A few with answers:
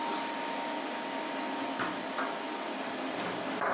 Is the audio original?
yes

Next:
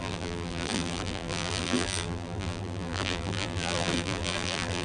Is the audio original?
no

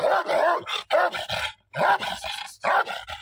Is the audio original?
yes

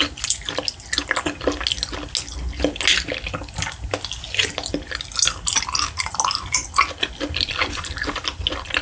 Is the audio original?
yes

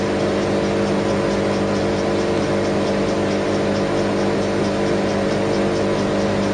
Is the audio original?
yes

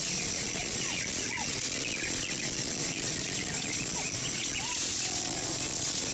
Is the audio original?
no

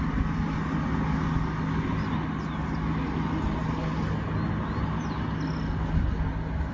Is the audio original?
yes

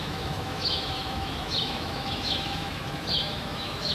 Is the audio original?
no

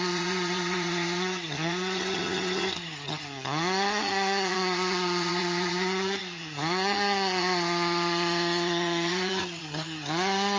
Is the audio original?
no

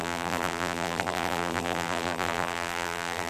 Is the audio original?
no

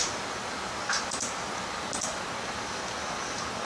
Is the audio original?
yes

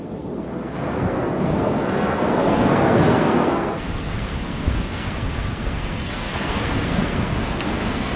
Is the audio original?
no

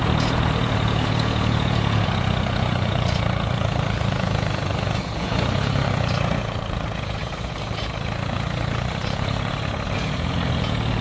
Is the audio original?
no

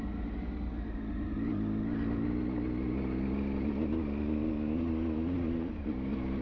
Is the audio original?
yes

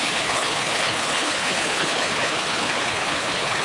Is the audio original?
no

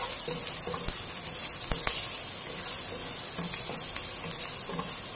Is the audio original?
yes